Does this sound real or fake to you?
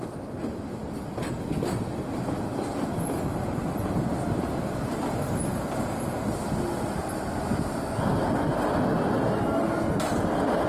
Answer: real